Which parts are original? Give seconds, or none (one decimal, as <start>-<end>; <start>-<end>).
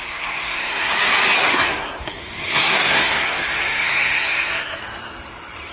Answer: 0.9-1.4; 4.8-5.7